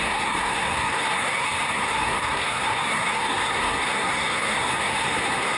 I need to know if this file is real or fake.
fake